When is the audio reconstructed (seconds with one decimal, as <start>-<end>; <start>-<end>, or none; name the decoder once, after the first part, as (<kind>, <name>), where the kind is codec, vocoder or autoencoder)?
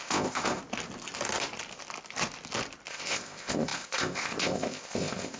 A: 0.0-0.6 (codec, ZipCodec); 2.9-5.4